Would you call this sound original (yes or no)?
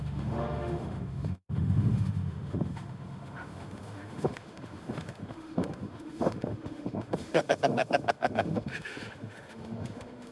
no